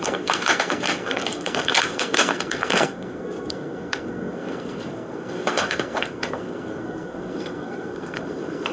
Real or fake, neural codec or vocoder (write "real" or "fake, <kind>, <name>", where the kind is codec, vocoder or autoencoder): fake, codec, SNAC